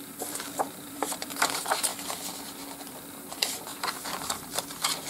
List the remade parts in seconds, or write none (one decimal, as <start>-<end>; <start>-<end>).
0.0-1.9; 3.1-5.1